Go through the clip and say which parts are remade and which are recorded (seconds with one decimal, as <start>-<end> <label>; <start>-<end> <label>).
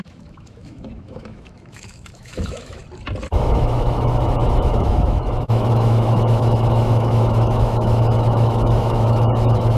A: 0.0-2.8 remade; 2.8-3.3 recorded; 3.3-9.8 remade